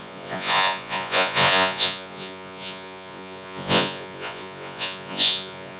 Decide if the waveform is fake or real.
fake